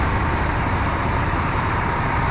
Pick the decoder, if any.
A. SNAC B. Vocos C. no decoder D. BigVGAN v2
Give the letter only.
D